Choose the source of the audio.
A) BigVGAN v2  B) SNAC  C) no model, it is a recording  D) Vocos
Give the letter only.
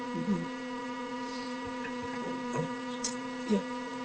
D